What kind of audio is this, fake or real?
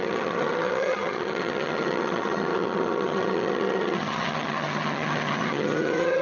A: fake